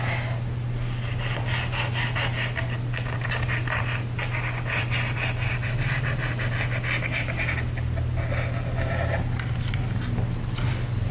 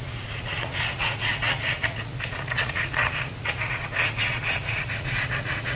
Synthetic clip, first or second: second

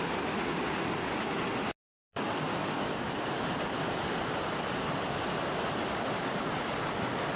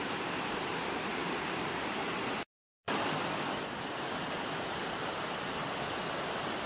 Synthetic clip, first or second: second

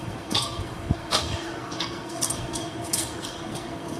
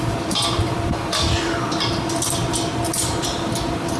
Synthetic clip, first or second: first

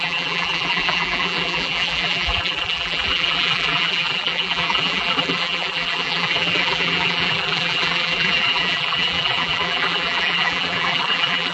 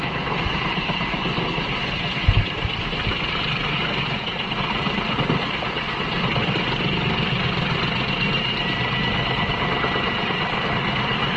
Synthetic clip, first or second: first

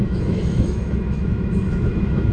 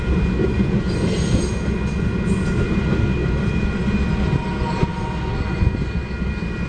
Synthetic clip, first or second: first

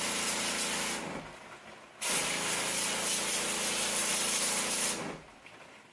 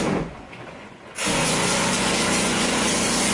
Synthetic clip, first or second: second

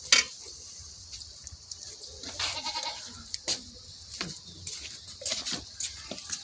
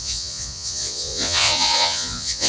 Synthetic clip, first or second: second